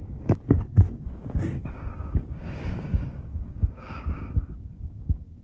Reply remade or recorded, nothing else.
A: remade